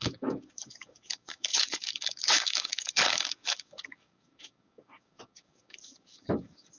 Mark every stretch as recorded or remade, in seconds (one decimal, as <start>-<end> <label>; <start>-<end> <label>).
0.0-6.8 remade